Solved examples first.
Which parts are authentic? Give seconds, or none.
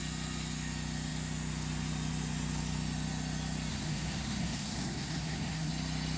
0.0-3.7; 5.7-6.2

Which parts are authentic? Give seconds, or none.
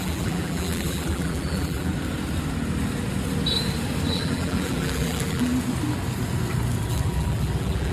1.9-4.1; 5.5-6.9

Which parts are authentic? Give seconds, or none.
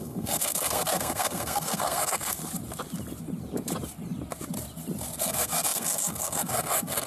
2.4-5.2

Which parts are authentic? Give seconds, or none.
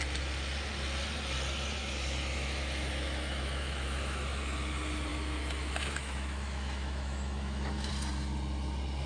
0.0-1.8; 4.4-5.1; 7.9-9.1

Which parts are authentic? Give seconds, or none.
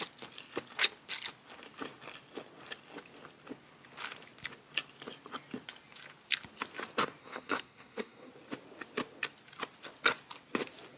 0.0-7.2; 8.3-11.0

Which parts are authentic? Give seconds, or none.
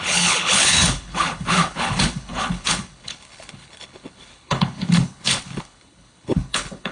none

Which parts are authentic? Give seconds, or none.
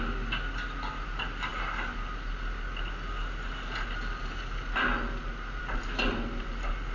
0.0-6.9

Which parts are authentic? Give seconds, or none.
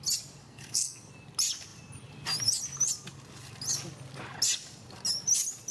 0.0-0.4; 1.1-5.7